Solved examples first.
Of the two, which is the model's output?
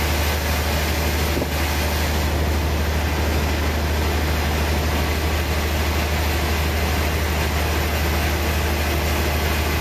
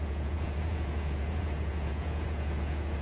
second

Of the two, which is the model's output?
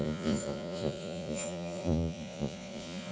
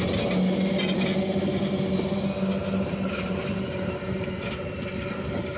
first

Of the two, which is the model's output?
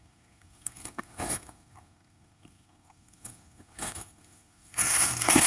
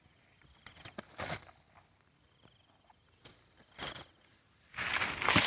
first